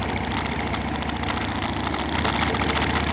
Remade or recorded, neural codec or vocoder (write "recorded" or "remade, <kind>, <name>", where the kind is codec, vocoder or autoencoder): recorded